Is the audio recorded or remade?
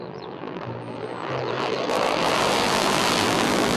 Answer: remade